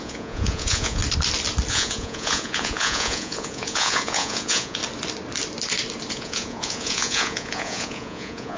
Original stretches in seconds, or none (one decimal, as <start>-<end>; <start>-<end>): 1.0-1.7; 4.8-6.1